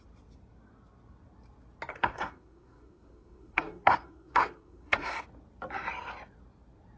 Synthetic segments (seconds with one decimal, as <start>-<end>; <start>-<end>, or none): 1.9-5.2